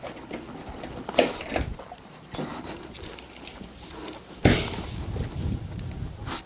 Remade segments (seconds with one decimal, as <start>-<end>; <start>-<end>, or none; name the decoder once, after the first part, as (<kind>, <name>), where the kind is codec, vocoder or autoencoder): 2.5-3.3 (vocoder, BigVGAN v2)